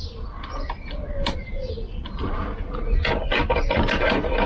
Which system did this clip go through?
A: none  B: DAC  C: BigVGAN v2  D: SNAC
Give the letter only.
A